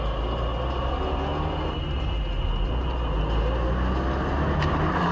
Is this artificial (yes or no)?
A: no